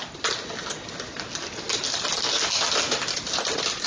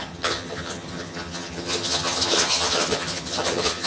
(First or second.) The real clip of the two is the first